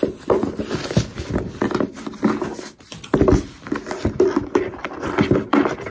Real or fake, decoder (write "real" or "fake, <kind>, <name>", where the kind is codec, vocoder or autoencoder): real